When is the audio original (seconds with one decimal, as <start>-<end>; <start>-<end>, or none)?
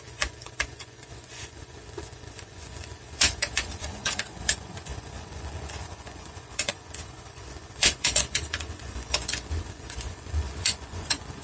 none